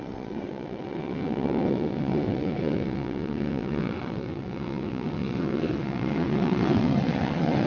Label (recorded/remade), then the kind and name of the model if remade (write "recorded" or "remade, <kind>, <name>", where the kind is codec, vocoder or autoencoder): remade, vocoder, WaveNeXt